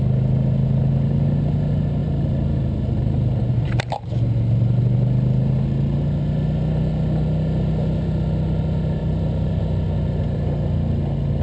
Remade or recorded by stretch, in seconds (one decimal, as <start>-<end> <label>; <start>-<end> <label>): 0.0-2.0 recorded; 2.0-4.2 remade; 4.2-9.0 recorded; 9.0-9.6 remade; 9.6-11.4 recorded